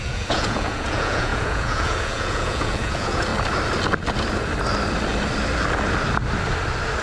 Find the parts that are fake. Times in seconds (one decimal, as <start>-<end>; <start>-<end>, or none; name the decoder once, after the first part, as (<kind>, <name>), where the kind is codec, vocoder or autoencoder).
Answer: 0.0-3.3 (vocoder, Vocos)